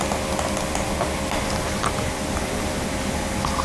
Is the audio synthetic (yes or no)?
no